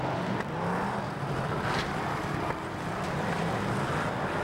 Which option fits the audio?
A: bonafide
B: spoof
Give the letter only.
A